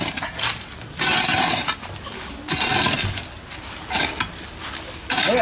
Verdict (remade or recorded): recorded